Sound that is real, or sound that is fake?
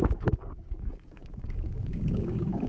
fake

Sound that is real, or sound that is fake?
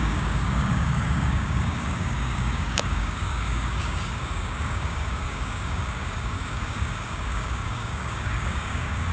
fake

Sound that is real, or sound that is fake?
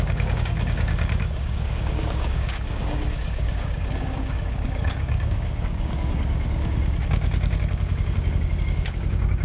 fake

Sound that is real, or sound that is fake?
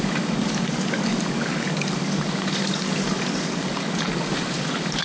fake